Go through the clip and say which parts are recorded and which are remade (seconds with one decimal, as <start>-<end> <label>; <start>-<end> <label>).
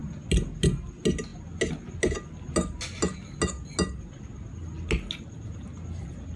0.0-6.4 recorded